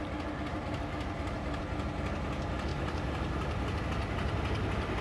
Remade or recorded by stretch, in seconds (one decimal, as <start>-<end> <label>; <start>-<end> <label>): 0.0-0.5 recorded; 0.5-1.6 remade; 1.6-2.7 recorded; 2.7-3.8 remade; 3.8-5.0 recorded